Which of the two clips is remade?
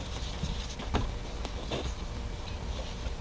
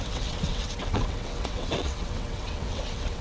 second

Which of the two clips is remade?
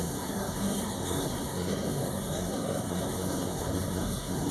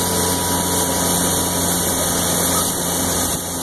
first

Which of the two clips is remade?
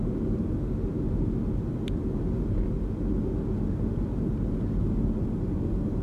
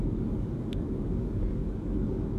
second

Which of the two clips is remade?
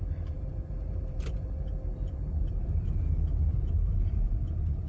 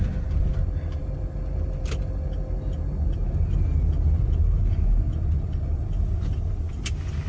first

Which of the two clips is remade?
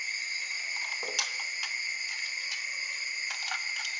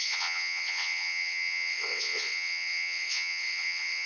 second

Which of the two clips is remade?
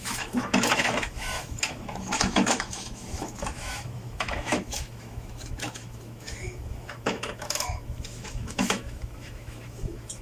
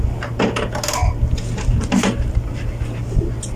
first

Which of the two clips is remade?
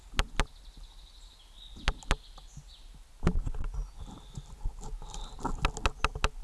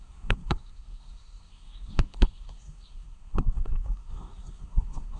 second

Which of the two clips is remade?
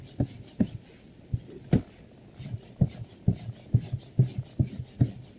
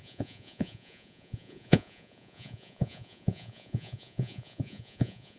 second